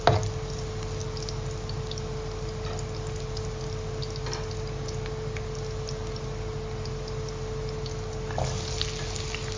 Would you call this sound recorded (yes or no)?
yes